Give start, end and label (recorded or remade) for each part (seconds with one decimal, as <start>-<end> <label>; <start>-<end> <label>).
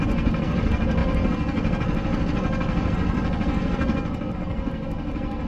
0.0-5.5 remade